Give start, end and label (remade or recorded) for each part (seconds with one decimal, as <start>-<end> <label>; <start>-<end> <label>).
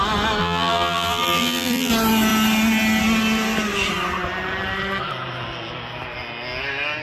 0.0-0.4 recorded; 0.4-1.9 remade; 1.9-7.0 recorded